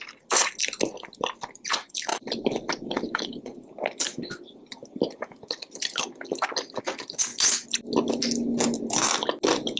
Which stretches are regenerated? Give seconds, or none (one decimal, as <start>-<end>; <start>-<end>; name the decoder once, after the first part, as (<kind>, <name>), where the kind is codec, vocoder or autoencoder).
none